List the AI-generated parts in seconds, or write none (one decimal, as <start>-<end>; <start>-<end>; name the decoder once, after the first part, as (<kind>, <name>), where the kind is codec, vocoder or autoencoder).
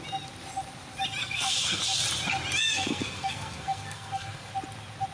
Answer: 1.2-1.8 (codec, SNAC); 2.6-4.5